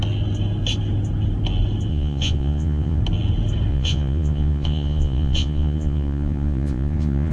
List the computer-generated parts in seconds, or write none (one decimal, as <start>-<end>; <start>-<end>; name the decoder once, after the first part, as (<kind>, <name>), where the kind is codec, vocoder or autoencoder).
1.9-3.0 (vocoder, Vocos); 3.7-7.3